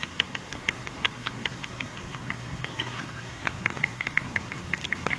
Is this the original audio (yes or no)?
no